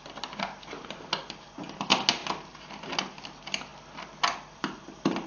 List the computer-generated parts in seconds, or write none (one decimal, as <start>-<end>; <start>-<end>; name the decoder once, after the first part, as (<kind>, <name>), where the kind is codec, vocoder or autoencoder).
none